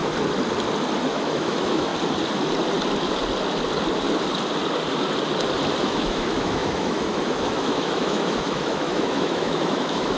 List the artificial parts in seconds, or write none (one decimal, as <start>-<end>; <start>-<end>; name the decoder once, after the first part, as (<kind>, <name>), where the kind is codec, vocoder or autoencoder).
1.1-1.9 (autoencoder, DAC-VAE); 5.8-10.2